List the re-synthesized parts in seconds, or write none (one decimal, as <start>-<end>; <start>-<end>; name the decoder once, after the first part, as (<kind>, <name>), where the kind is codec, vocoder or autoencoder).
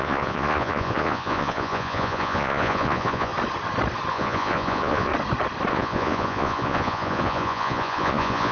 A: 0.0-3.3 (vocoder, Vocos); 4.1-5.1; 5.7-8.5